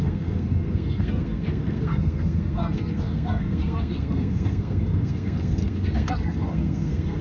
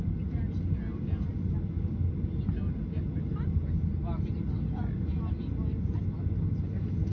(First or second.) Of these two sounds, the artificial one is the first